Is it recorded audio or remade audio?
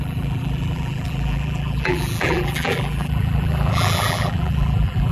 remade